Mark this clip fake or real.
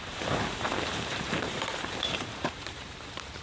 fake